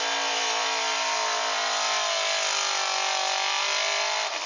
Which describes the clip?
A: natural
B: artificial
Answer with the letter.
A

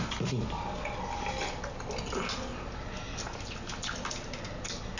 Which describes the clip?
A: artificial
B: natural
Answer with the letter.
B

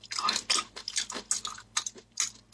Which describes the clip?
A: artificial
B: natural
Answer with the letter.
B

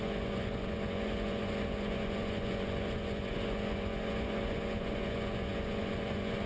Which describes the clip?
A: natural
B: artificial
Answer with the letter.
B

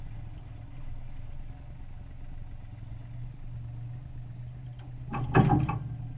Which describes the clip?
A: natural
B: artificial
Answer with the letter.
A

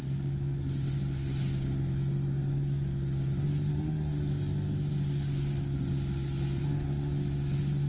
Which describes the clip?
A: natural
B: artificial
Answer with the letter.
A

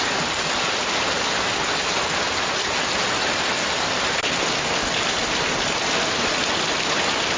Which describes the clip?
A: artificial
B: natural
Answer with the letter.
B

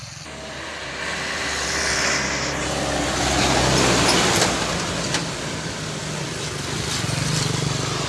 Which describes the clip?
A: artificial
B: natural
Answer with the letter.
B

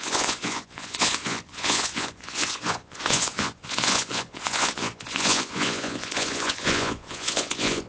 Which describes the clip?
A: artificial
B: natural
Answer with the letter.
A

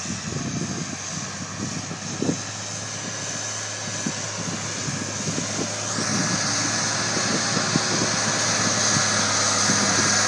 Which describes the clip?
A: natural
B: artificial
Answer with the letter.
A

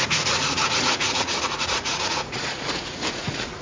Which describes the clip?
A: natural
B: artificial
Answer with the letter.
B